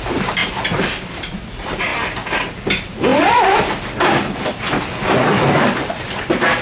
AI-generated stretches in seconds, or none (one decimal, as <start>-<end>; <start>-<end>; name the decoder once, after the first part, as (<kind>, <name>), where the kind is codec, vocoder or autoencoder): 0.0-1.9 (vocoder, BigVGAN v2); 2.5-6.6